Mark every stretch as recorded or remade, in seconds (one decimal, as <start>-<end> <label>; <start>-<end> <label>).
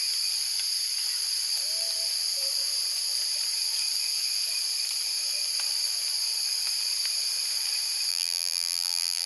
0.0-8.1 recorded; 8.1-9.3 remade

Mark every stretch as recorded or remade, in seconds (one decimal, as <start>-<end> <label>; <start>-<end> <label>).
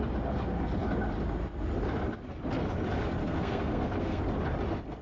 0.0-3.2 recorded; 3.2-4.2 remade; 4.2-5.0 recorded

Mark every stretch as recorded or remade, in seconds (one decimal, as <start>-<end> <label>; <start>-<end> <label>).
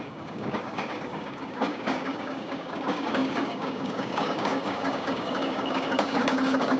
0.0-6.8 remade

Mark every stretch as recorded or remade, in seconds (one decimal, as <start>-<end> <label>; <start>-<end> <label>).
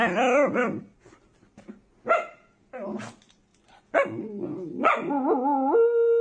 0.0-3.5 recorded; 3.5-5.1 remade; 5.1-6.2 recorded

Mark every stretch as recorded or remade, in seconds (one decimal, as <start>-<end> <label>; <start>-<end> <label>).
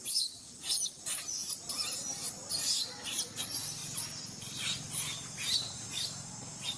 0.0-3.8 remade; 3.8-4.6 recorded; 4.6-6.8 remade